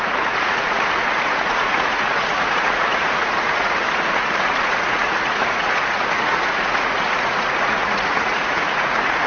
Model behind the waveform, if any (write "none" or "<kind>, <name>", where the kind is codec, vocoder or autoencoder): vocoder, Vocos